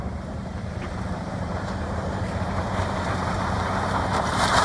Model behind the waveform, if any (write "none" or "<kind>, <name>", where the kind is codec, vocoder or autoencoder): vocoder, BigVGAN v2